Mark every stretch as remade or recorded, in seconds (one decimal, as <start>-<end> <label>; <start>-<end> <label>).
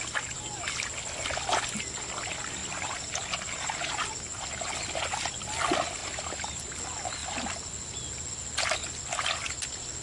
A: 0.0-2.6 recorded; 2.6-3.9 remade; 3.9-6.0 recorded; 6.0-6.8 remade; 6.8-10.0 recorded